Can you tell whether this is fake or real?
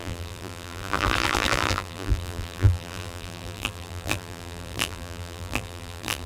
fake